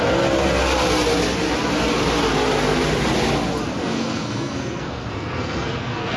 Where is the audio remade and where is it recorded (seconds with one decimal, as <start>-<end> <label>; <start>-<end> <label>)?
0.0-3.8 recorded; 3.8-6.2 remade